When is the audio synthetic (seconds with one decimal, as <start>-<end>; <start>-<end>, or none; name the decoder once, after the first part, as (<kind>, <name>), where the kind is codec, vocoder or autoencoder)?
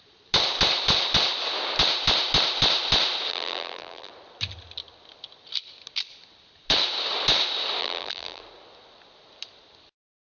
3.3-4.1 (vocoder, BigVGAN v2); 7.8-8.4